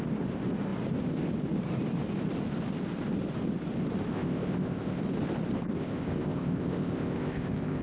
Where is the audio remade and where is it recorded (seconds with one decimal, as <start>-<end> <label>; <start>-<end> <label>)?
0.0-4.1 recorded; 4.1-5.0 remade; 5.0-5.8 recorded; 5.8-7.8 remade